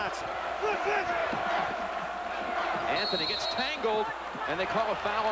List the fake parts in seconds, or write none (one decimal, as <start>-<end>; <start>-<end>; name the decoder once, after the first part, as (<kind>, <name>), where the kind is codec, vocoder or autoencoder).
none